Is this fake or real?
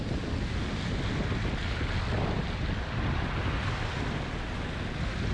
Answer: real